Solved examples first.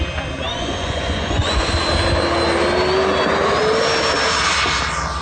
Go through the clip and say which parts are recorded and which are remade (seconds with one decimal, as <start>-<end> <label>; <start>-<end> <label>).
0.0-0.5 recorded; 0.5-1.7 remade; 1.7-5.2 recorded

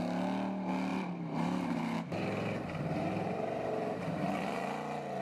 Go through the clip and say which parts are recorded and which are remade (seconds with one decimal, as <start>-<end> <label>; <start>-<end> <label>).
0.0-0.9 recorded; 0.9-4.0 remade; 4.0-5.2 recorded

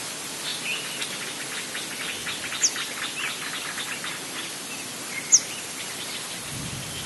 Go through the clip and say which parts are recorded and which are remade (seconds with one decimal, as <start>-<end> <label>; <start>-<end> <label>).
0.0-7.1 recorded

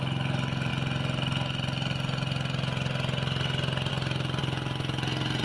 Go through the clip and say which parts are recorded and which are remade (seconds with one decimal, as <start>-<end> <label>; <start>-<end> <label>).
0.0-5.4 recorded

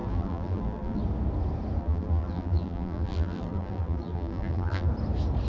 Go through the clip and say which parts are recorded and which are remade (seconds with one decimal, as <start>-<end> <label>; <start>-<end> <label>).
0.0-1.0 remade; 1.0-1.8 recorded; 1.8-4.9 remade; 4.9-5.5 recorded